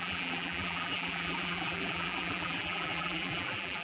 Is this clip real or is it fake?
fake